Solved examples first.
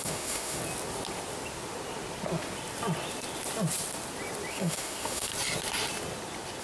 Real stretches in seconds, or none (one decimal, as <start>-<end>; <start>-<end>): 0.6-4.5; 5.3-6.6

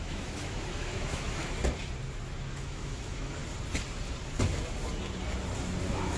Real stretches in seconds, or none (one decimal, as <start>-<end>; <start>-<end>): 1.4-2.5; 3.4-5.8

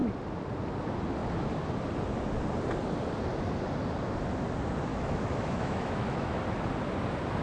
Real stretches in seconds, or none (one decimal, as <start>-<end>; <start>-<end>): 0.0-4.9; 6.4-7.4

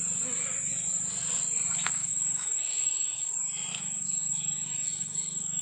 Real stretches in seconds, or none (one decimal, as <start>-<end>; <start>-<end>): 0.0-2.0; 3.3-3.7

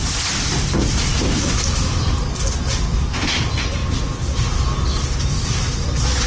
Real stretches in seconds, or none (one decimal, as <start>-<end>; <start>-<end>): 0.0-0.9; 2.0-6.3

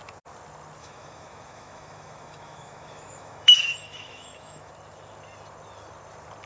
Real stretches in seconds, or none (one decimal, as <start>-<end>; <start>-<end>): 0.0-0.8; 4.7-6.5

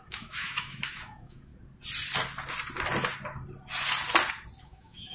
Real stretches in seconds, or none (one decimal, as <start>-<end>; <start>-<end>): 1.5-4.6

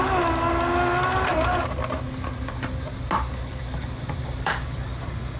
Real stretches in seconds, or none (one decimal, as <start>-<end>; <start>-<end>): 0.0-5.4